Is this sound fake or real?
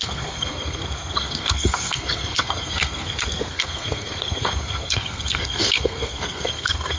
fake